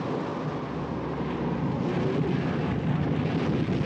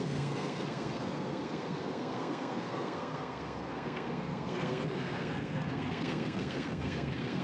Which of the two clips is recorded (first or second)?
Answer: first